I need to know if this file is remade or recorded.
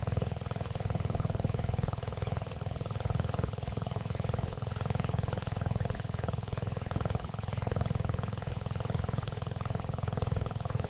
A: remade